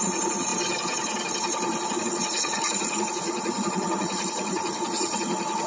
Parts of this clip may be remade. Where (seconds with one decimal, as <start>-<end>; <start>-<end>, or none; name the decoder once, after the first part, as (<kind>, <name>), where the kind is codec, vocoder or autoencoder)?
0.0-0.5 (vocoder, Vocos); 2.0-5.7